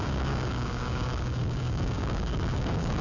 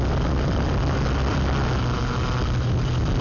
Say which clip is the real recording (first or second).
second